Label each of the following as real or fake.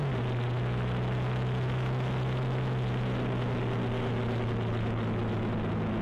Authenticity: real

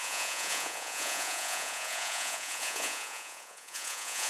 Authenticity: fake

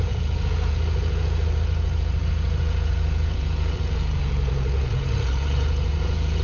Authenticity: fake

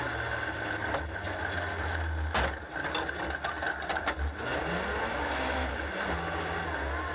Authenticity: real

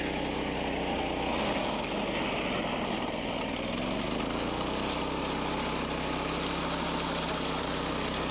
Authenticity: real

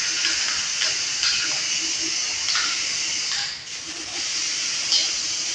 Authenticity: real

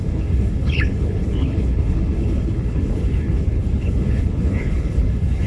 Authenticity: fake